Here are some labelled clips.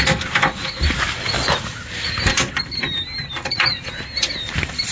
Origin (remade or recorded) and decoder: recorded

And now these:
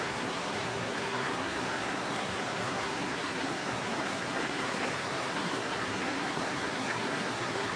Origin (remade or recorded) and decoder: remade, codec, SNAC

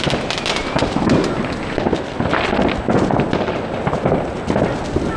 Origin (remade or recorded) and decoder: recorded